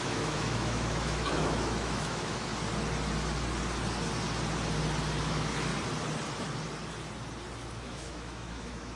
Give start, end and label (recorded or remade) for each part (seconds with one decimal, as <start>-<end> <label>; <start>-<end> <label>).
0.0-2.5 remade; 2.5-5.2 recorded; 5.2-5.7 remade; 5.7-7.8 recorded; 7.8-9.0 remade